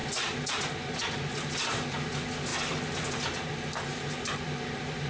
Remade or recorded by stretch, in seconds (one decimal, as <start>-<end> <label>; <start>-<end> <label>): 0.0-5.1 recorded